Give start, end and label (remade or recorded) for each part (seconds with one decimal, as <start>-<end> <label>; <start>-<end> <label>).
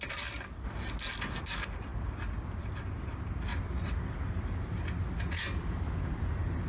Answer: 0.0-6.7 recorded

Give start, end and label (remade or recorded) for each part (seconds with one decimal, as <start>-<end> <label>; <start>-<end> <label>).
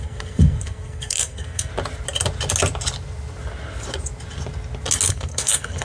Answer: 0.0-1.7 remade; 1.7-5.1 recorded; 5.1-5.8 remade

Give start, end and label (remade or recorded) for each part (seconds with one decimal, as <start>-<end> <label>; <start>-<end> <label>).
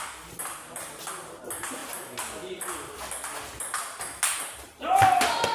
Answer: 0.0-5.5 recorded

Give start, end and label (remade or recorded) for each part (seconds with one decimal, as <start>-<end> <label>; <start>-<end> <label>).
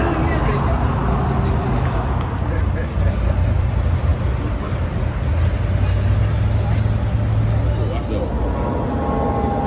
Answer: 0.0-9.7 recorded